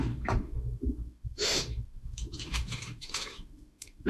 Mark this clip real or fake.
fake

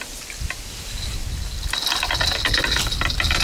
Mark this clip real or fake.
real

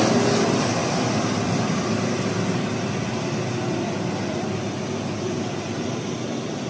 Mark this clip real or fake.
real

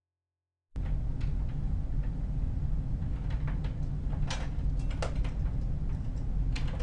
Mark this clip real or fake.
real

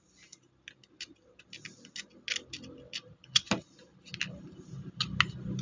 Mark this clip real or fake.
real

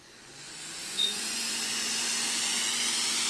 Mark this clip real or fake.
fake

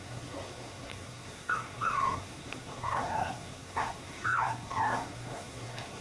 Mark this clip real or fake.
fake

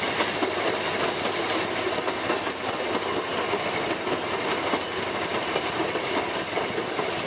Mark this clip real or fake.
real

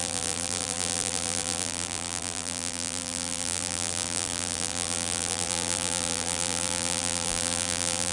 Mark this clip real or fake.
fake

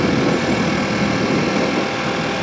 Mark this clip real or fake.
real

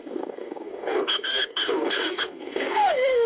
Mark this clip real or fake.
fake